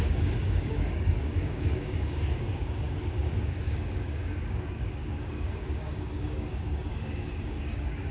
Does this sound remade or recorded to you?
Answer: remade